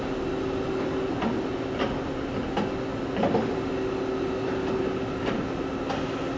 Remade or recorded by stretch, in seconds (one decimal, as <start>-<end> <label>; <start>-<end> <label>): 0.0-6.4 recorded